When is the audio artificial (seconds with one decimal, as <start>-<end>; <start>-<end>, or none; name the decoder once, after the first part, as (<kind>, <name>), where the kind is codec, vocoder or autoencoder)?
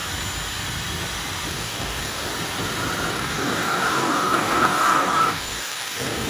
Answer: 1.5-2.3 (codec, DAC); 3.1-6.3